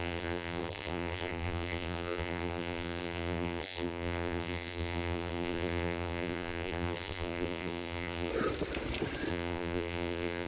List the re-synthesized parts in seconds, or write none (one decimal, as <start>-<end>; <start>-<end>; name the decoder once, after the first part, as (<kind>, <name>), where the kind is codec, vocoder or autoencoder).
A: 0.0-8.3 (vocoder, BigVGAN v2); 9.3-10.5